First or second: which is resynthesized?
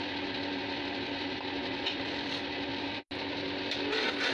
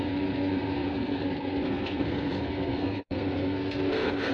second